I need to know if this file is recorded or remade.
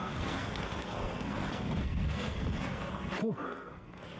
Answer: remade